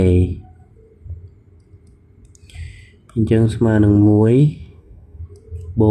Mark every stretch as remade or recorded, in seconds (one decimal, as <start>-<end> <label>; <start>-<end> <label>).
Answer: 0.0-4.0 recorded; 4.0-5.2 remade; 5.2-5.9 recorded